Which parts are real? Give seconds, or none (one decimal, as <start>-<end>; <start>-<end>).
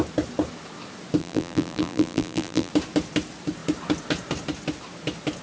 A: 0.0-1.2; 2.7-5.4